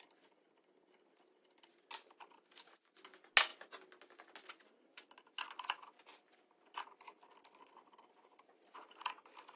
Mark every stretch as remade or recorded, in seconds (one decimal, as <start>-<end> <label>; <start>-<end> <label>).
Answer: 0.0-9.6 recorded